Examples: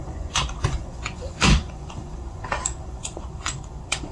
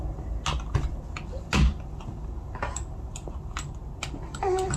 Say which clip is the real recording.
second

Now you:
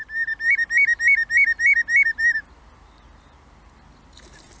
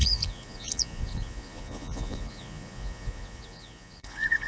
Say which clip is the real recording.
first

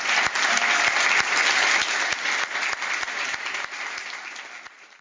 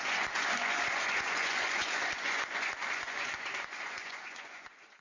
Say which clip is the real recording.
first